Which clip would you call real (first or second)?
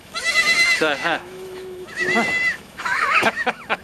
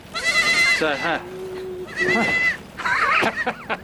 second